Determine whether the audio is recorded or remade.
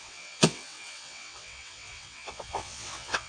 remade